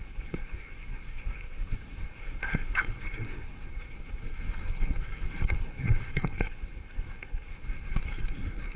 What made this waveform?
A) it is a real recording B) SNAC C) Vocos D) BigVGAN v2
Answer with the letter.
B